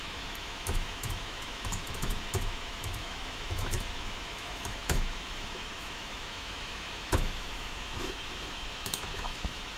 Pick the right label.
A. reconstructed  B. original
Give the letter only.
A